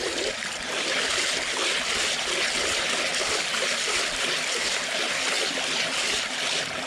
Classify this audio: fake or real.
real